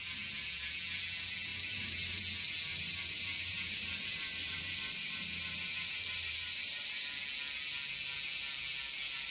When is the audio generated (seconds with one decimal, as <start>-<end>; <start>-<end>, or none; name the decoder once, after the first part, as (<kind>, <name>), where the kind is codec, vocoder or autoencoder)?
1.5-2.2 (vocoder, BigVGAN v2); 2.7-7.0